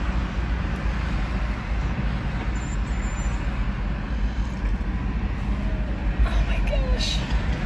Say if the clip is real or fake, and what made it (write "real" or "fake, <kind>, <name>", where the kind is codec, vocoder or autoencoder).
real